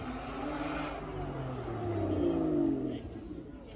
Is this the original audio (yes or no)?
yes